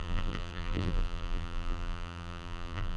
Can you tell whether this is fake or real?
fake